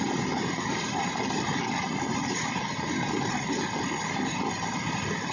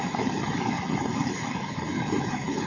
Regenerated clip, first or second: second